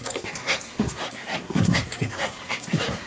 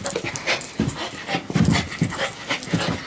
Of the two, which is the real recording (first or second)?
second